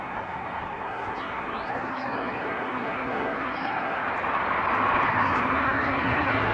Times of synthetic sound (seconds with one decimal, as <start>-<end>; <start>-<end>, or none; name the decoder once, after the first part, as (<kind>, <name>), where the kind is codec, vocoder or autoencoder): 0.0-4.0 (codec, SNAC); 5.1-6.5